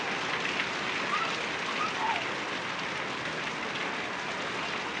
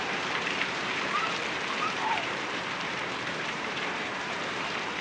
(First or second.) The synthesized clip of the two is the second